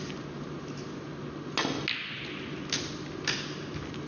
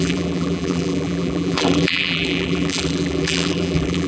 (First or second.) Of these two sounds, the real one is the first